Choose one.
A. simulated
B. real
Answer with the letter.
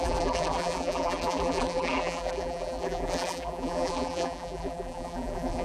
A